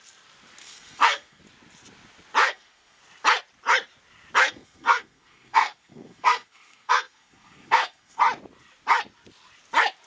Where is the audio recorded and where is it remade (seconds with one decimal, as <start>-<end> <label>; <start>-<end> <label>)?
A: 0.0-0.6 recorded; 0.6-1.4 remade; 1.4-2.4 recorded; 2.4-3.0 remade; 3.0-4.4 recorded; 4.4-8.2 remade; 8.2-10.1 recorded